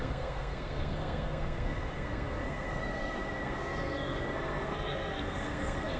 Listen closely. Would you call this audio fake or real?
fake